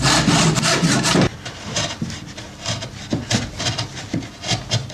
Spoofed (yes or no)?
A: no